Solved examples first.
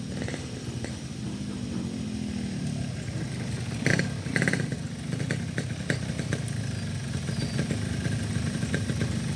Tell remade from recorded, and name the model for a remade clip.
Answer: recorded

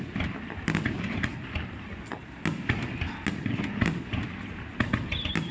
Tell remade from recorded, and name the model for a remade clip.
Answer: recorded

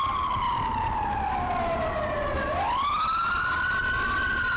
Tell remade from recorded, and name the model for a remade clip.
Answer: recorded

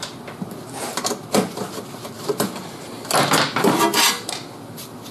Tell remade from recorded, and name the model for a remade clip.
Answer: recorded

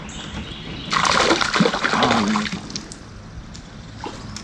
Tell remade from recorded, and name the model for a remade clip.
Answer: recorded